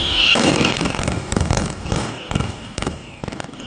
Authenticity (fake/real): fake